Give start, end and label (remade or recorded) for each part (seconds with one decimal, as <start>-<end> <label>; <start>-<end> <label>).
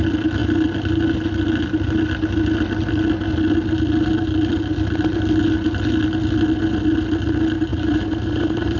0.0-7.7 recorded; 7.7-8.8 remade